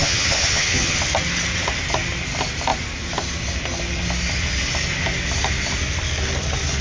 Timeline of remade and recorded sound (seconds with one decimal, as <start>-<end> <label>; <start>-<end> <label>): 0.0-1.0 remade; 1.0-6.8 recorded